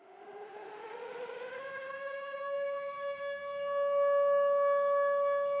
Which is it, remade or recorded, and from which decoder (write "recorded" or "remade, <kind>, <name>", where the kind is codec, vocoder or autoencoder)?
remade, autoencoder, DAC-VAE